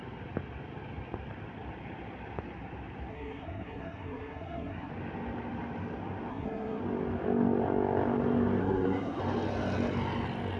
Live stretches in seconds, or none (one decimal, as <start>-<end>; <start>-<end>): 0.0-3.1; 4.9-6.3; 6.8-8.6; 9.2-10.6